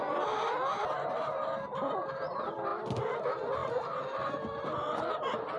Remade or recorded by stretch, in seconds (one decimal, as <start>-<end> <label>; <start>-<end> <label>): 0.0-5.6 recorded